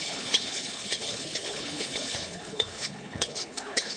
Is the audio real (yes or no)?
no